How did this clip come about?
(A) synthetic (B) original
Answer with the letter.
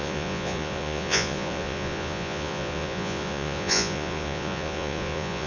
A